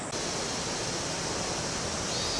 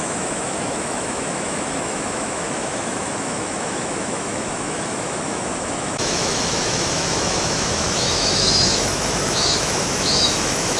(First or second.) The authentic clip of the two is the first